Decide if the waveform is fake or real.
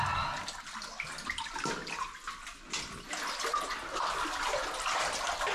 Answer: real